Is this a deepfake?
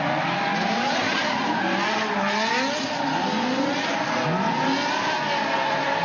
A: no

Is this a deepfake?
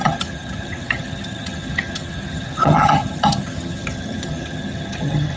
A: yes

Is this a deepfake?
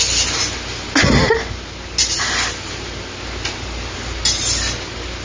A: no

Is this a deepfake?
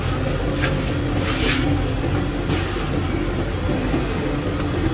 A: no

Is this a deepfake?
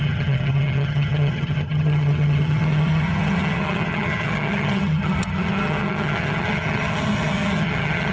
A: yes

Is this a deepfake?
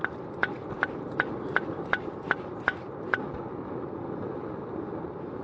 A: no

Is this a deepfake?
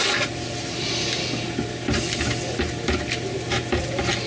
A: no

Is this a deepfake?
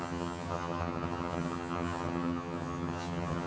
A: yes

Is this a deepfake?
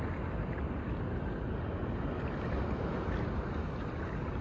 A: no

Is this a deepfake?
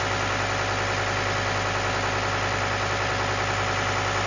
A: no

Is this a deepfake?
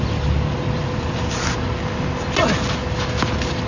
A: no